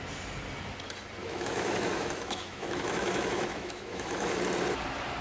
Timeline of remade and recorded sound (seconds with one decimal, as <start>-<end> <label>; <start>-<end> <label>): 0.0-1.2 recorded; 1.2-4.3 remade; 4.3-5.2 recorded